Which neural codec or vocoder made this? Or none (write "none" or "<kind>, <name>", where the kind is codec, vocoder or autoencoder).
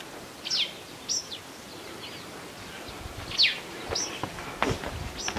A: none